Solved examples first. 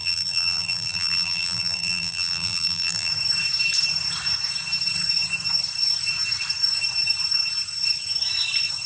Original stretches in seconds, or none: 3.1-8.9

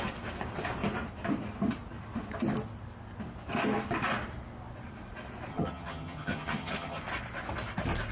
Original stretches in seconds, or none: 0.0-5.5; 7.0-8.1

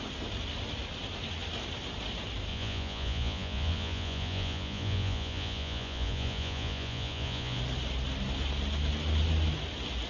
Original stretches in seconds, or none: 0.0-2.5; 7.6-10.1

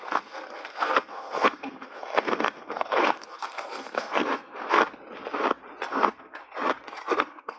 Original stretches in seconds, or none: 4.8-5.9; 6.4-7.1

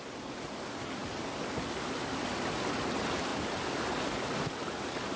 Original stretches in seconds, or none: 0.0-5.2